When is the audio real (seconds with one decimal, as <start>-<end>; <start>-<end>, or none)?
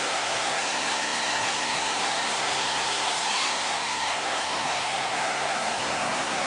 none